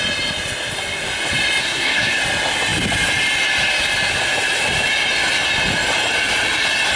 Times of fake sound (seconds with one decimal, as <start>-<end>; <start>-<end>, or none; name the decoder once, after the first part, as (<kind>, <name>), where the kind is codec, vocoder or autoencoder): 1.6-2.2 (codec, SNAC)